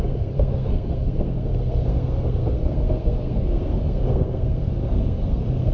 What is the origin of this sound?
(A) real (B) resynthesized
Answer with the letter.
B